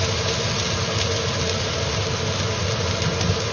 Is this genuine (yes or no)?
yes